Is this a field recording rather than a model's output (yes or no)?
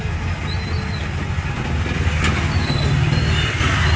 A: yes